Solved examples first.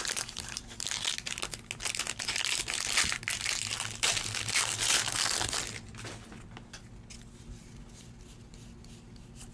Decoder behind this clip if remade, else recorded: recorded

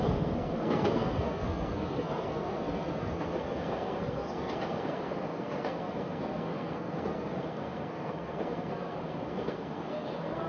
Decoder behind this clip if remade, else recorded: remade, codec, SNAC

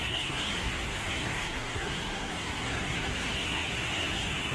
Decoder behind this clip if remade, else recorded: remade, codec, SNAC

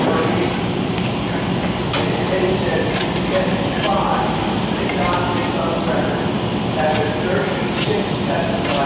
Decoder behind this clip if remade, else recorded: recorded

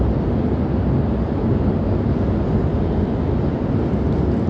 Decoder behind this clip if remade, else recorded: recorded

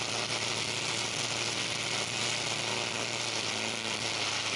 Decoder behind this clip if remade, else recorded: recorded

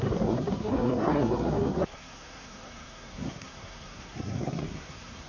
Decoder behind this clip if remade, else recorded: remade, codec, SNAC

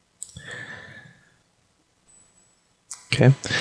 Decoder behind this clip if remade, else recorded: recorded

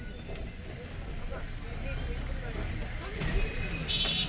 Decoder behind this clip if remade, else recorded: recorded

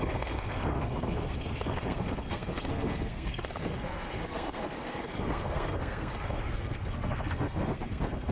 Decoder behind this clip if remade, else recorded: remade, codec, SNAC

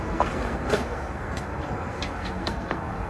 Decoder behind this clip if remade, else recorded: remade, codec, SNAC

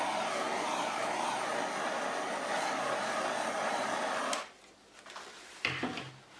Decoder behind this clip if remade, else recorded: recorded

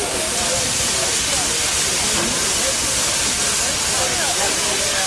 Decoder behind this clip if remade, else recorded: recorded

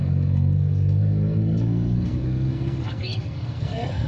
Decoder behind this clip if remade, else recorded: remade, codec, SNAC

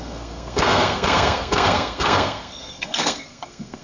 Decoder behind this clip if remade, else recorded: remade, codec, SNAC